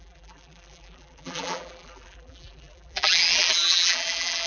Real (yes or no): no